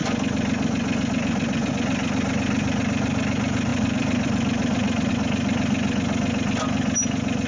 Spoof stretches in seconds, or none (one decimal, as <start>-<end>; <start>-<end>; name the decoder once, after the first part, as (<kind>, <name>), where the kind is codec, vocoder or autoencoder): 3.7-5.1 (vocoder, BigVGAN v2)